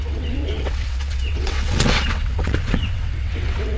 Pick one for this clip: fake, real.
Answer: fake